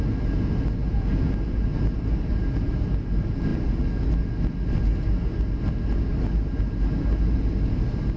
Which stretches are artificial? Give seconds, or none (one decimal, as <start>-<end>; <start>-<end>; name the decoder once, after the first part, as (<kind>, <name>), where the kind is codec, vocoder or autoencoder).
0.8-1.3 (vocoder, Vocos)